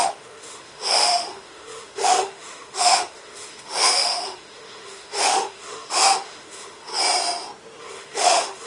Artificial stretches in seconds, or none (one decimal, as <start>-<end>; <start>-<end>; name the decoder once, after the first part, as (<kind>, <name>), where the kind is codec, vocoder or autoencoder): 0.0-6.9 (autoencoder, DAC-VAE); 7.8-8.7